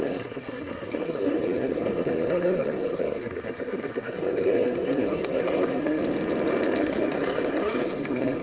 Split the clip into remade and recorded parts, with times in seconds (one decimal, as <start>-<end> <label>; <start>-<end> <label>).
0.0-6.0 remade; 6.0-6.8 recorded; 6.8-8.4 remade

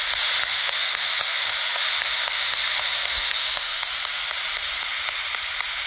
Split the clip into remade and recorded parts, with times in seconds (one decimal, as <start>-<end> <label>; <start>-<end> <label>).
0.0-0.4 recorded; 0.4-3.9 remade; 3.9-5.9 recorded